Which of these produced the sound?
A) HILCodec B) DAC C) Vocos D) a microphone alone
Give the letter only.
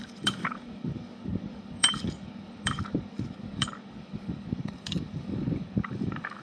B